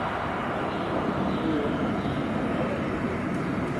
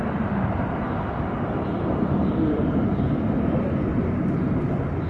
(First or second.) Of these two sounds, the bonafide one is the first